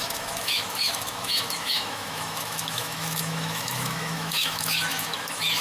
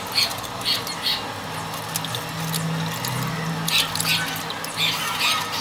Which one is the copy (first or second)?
first